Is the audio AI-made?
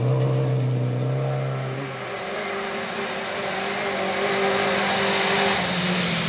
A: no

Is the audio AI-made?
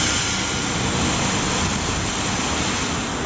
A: no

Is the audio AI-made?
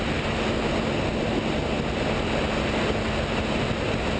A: no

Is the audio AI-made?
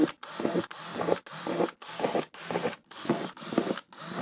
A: no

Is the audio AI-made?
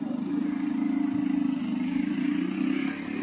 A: no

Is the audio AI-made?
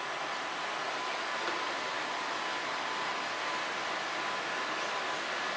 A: no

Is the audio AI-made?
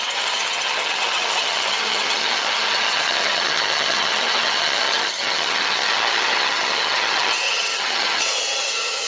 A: yes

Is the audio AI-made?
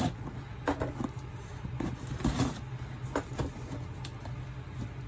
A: no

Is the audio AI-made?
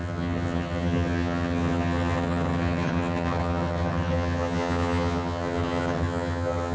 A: yes